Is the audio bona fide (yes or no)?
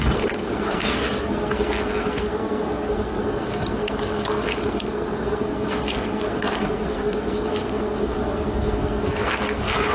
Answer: no